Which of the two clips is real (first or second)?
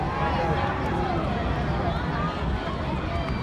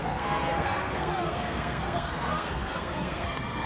first